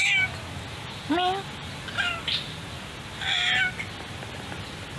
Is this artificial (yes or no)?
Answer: no